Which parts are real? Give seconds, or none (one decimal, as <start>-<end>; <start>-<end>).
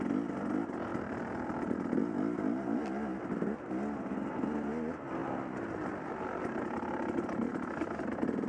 0.0-0.9; 1.6-5.2; 6.6-8.5